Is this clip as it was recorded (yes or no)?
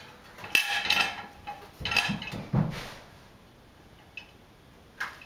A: yes